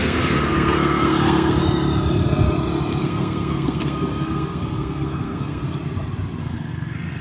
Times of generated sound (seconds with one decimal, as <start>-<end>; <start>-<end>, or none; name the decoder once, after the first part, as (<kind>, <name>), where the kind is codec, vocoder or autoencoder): 0.0-1.6 (codec, SNAC); 3.0-5.6; 6.4-7.2